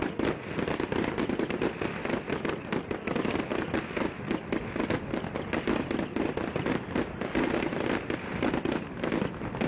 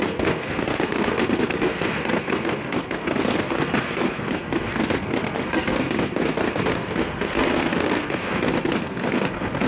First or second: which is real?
first